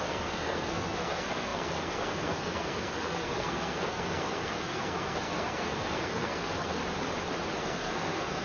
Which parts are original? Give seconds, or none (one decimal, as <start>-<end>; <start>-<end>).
6.8-7.6